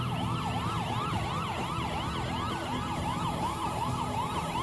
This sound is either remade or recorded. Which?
recorded